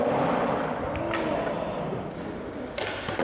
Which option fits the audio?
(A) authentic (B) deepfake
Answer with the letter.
A